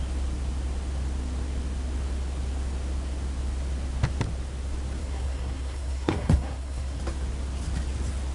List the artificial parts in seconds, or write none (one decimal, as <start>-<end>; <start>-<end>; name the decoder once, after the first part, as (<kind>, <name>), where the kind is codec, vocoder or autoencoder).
5.0-7.0 (codec, SNAC)